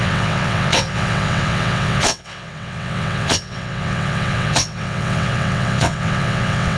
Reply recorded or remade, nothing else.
remade